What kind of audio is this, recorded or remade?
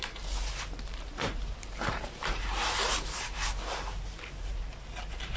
remade